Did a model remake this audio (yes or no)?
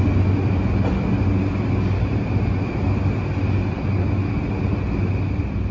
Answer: no